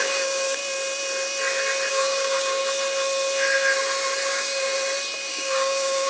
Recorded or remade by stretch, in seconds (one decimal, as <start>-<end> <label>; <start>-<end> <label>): 0.0-0.6 remade; 0.6-1.9 recorded; 1.9-2.6 remade; 2.6-4.3 recorded; 4.3-4.7 remade; 4.7-5.3 recorded; 5.3-6.1 remade